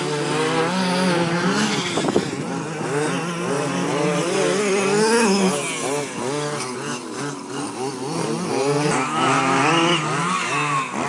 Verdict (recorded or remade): recorded